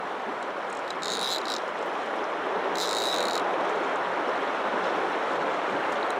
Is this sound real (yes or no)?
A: yes